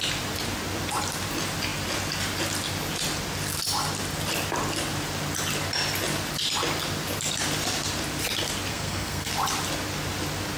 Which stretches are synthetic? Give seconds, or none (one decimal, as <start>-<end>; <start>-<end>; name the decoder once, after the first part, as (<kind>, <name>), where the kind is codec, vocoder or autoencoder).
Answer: 8.7-9.3 (codec, SNAC)